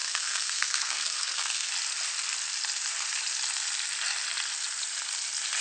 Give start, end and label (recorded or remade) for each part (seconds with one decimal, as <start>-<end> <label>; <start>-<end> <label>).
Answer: 0.0-1.7 remade; 1.7-5.6 recorded